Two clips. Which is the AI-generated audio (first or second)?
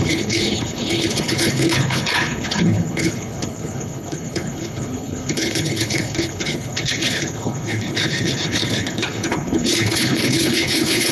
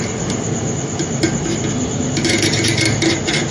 first